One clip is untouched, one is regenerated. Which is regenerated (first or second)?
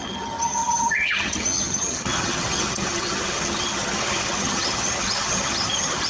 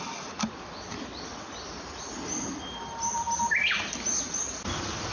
first